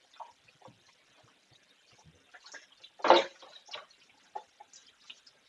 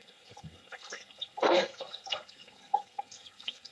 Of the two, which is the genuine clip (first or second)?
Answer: first